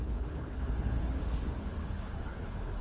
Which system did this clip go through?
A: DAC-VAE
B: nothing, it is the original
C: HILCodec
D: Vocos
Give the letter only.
C